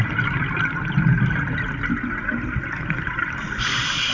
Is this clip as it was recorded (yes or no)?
yes